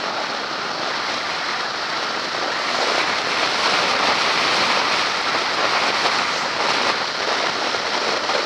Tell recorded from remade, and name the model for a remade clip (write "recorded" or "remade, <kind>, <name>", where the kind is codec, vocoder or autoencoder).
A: remade, vocoder, BigVGAN v2